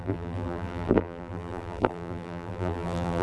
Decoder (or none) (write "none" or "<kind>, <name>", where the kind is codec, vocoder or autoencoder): vocoder, BigVGAN v2